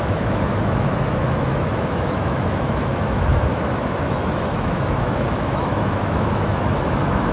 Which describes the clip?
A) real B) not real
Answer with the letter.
B